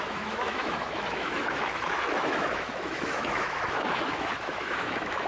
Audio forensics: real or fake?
fake